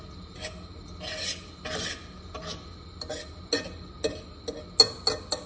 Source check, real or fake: real